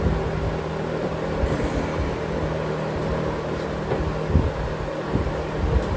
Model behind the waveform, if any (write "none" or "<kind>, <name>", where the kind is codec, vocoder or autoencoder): none